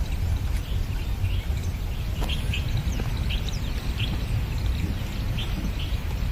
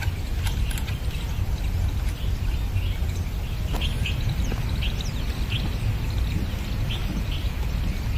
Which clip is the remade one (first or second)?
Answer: first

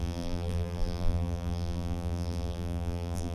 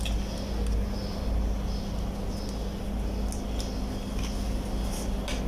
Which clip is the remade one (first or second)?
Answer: first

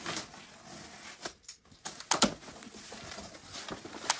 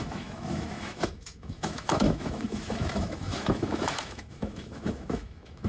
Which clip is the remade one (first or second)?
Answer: second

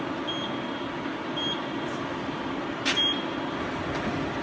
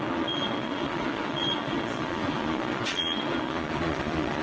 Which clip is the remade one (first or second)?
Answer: second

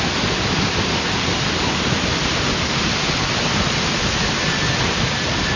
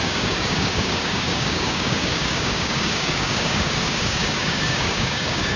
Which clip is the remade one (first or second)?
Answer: second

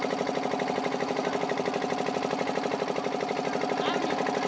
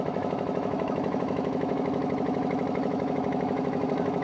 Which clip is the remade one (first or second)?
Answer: second